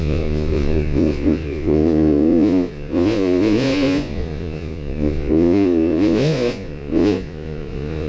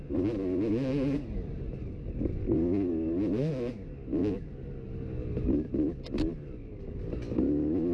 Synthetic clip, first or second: first